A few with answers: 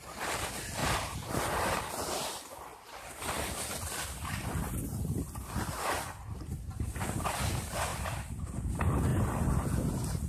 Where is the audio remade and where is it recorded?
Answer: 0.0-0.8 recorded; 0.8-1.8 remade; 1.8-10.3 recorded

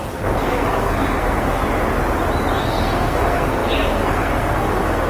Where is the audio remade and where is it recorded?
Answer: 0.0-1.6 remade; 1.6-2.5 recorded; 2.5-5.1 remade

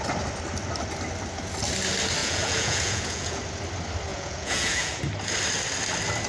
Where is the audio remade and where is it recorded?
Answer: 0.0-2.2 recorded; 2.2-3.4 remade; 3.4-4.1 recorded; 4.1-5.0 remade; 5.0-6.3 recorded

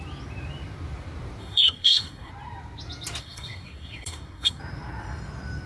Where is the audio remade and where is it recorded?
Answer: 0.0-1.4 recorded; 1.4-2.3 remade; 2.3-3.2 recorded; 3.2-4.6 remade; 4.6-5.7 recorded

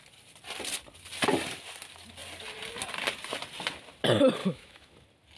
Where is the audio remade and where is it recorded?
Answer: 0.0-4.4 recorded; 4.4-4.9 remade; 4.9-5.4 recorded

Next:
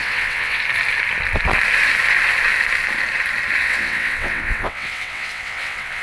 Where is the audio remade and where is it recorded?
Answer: 0.0-0.6 remade; 0.6-3.6 recorded; 3.6-6.0 remade

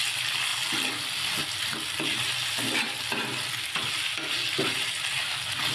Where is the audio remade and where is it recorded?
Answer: 0.0-5.7 recorded